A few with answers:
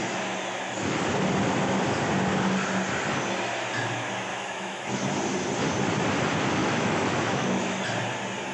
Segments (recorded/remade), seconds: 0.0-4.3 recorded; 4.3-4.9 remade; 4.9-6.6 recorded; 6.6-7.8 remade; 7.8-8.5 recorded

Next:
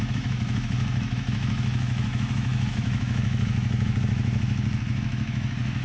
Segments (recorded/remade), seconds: 0.0-5.8 remade